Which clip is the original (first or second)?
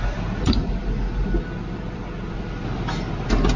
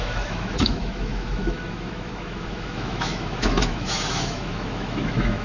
first